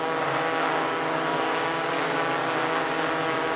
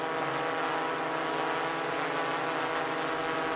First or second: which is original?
second